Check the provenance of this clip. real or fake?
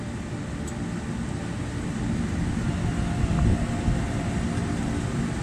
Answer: real